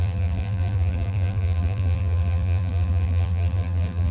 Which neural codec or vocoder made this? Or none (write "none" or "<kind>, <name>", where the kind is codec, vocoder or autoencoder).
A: vocoder, BigVGAN v2